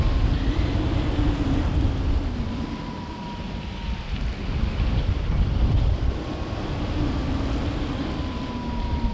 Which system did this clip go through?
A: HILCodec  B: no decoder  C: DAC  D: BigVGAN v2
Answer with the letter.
B